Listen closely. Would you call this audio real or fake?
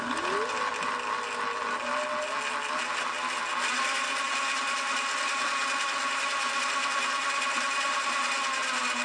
real